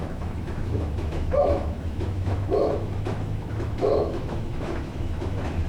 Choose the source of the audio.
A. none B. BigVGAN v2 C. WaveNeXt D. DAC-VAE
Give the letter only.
D